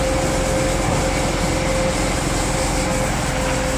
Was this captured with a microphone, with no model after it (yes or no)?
yes